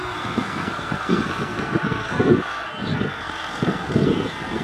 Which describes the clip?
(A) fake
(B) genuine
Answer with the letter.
A